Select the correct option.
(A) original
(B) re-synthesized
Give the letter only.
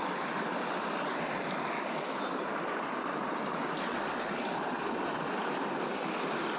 A